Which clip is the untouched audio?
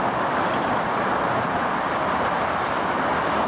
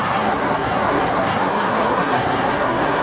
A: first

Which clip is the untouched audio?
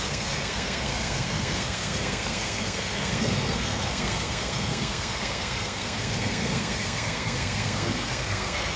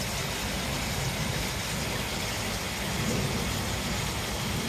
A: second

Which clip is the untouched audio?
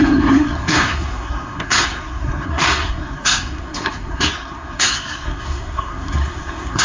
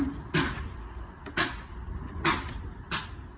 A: second